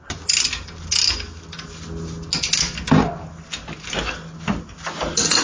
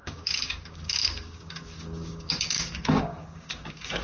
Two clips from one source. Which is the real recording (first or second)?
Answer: first